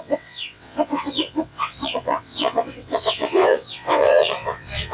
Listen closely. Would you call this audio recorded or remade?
remade